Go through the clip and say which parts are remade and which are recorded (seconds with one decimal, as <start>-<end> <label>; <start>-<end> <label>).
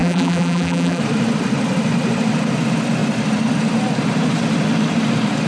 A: 0.0-1.0 remade; 1.0-5.5 recorded